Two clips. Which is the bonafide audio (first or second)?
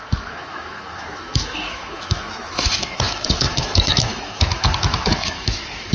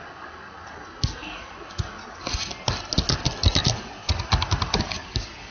second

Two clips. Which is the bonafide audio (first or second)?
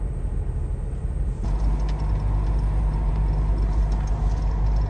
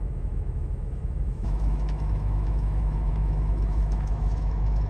first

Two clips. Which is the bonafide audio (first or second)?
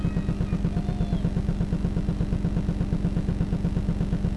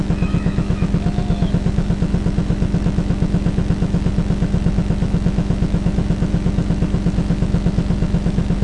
first